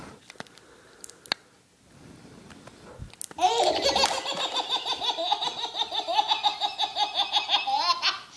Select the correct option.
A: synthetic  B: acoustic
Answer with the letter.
B